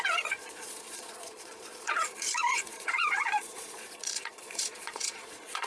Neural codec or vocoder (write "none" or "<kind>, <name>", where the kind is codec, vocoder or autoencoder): vocoder, Vocos